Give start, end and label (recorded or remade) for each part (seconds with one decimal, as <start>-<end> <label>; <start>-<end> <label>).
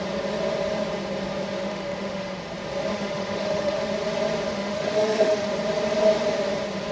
0.0-1.6 recorded; 1.6-2.4 remade; 2.4-2.9 recorded; 2.9-3.8 remade; 3.8-4.5 recorded; 4.5-5.5 remade; 5.5-6.9 recorded